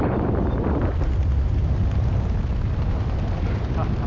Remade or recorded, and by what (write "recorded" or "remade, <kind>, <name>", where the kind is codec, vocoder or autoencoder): remade, vocoder, BigVGAN v2